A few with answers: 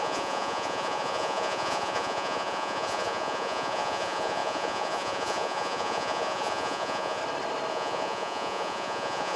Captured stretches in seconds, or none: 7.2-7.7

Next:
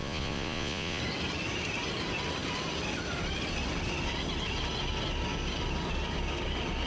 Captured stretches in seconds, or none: 1.0-6.9

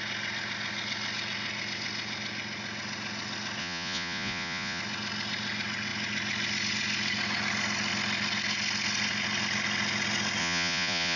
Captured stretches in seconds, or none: 0.0-3.6; 4.8-10.4

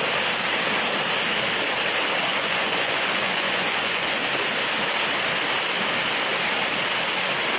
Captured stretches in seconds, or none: 0.0-2.3; 4.3-7.6